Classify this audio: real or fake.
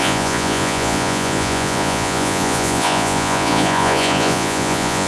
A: fake